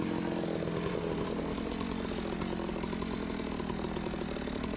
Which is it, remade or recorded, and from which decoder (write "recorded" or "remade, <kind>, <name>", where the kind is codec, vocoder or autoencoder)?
recorded